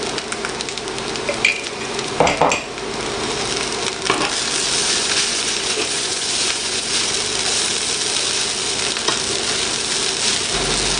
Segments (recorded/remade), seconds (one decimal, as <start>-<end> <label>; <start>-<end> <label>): 0.0-1.5 recorded; 1.5-2.1 remade; 2.1-4.8 recorded; 4.8-7.1 remade; 7.1-11.0 recorded